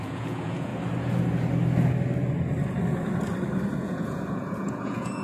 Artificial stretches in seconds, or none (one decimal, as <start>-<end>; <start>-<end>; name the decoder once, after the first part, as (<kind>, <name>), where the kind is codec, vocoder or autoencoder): 0.0-0.7 (vocoder, Vocos); 3.8-5.2